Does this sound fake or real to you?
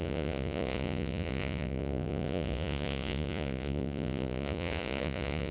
fake